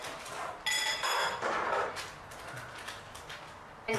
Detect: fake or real real